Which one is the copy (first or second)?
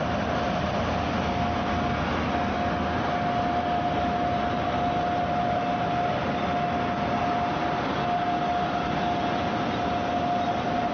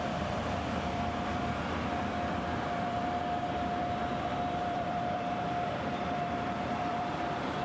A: second